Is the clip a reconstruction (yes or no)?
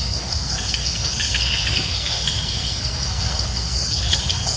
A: yes